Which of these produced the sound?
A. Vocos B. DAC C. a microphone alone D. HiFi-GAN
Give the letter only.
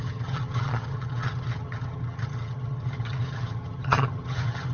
D